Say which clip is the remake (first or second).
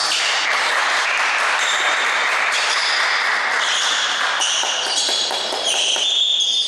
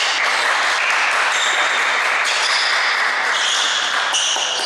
first